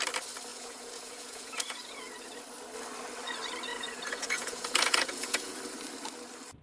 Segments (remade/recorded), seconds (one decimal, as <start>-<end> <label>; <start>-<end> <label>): 0.0-0.5 recorded; 0.5-2.3 remade; 2.3-3.7 recorded; 3.7-5.6 remade; 5.6-6.6 recorded